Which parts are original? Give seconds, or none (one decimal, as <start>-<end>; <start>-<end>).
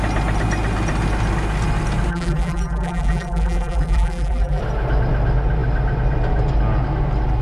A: 0.0-2.1; 4.6-7.4